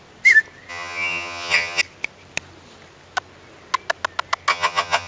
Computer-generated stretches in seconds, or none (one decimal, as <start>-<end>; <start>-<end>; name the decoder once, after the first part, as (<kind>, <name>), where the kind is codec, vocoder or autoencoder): 0.7-1.8 (vocoder, HiFi-GAN); 4.5-5.1